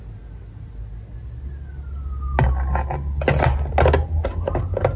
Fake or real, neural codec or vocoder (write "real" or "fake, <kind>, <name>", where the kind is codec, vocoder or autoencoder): real